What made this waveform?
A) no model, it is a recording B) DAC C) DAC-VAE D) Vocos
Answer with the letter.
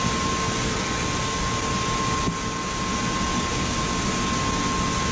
A